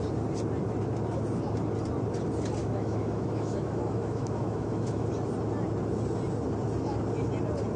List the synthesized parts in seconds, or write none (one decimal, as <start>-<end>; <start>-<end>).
2.6-5.1